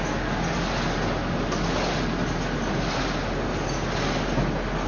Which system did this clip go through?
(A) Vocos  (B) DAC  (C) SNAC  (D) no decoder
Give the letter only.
D